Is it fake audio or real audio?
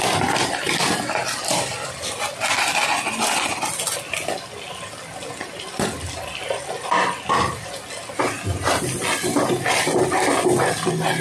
real